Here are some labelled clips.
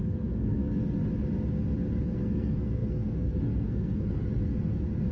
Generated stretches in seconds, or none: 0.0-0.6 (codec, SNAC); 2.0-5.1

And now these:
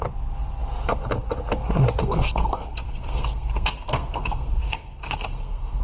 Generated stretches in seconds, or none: 2.0-5.8 (codec, SNAC)

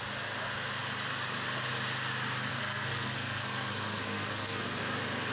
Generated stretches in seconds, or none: 2.5-4.8 (codec, SNAC)